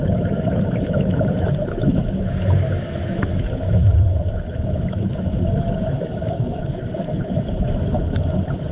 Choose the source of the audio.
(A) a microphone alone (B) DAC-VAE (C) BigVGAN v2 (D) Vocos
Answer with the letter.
B